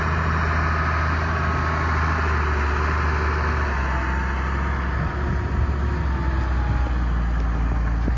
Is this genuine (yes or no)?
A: yes